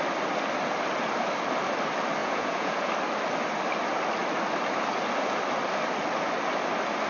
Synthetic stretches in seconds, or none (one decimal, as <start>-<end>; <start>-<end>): 2.2-2.9